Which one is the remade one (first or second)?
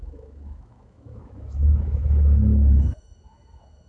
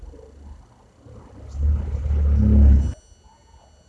first